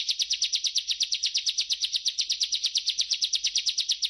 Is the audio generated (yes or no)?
yes